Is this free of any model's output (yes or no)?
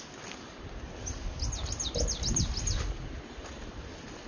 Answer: yes